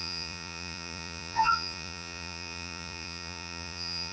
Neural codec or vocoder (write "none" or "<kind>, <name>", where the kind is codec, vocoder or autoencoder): vocoder, Vocos